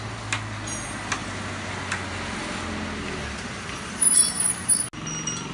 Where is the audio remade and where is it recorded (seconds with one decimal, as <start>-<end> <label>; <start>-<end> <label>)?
0.0-5.5 recorded